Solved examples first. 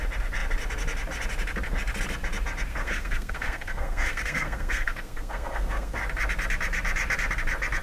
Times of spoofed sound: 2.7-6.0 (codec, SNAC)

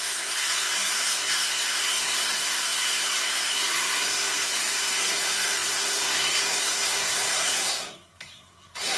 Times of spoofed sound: 0.0-9.0 (codec, SNAC)

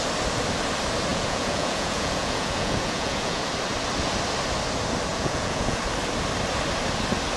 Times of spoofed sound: 1.1-3.4 (vocoder, Vocos); 5.1-5.8

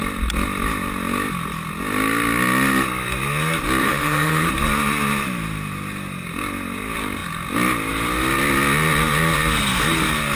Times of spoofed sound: 3.8-4.5 (autoencoder, DAC-VAE)